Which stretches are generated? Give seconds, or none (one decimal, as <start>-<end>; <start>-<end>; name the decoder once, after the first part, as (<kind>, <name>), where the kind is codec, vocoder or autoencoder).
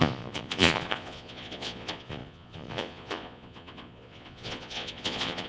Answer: 0.0-5.5 (vocoder, Vocos)